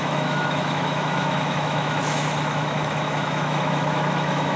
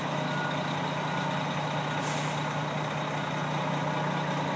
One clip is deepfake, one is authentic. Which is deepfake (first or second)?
first